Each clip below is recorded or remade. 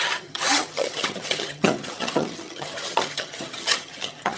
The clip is remade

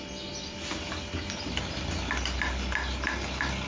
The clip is recorded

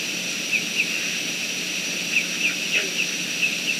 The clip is recorded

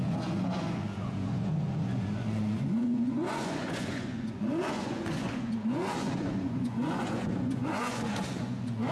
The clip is remade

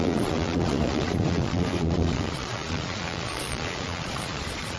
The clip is remade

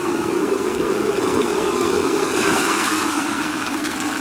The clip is remade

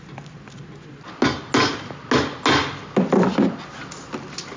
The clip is recorded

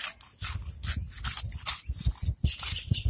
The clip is recorded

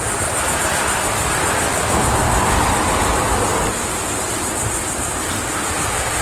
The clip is recorded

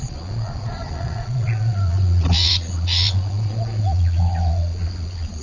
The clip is remade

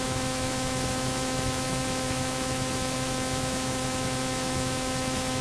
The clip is remade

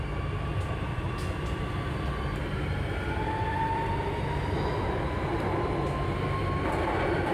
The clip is recorded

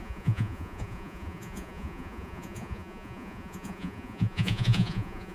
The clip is remade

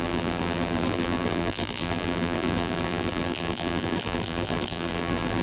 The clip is remade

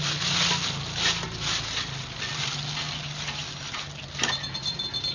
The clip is recorded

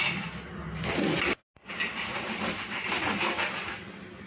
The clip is recorded